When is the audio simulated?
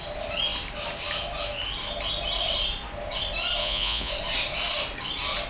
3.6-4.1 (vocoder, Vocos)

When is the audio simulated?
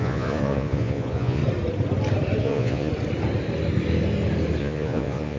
0.0-1.4 (vocoder, Vocos); 2.4-2.9; 4.6-5.4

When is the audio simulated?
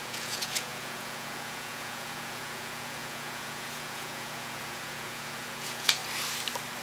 0.0-6.0 (vocoder, Vocos)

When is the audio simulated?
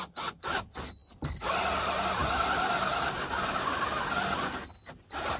none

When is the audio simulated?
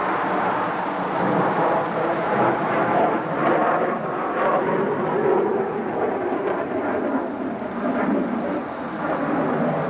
none